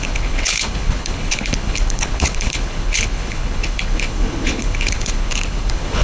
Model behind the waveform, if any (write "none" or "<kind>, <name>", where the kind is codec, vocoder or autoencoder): codec, HILCodec